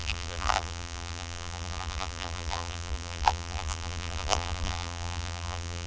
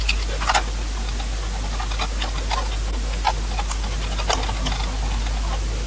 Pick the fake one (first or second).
first